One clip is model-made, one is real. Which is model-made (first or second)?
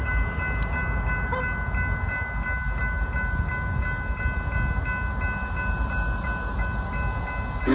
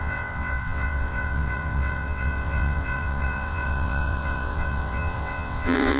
second